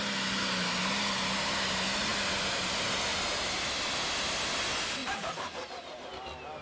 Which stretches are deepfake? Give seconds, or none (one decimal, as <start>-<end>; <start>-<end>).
5.0-6.1